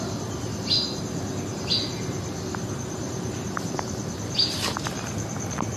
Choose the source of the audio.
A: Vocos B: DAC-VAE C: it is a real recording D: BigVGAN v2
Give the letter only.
C